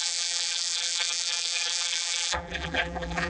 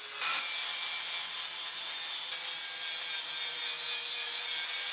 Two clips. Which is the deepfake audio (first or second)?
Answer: first